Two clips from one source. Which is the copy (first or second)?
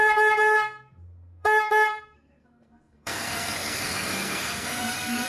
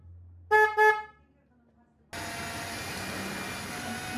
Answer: first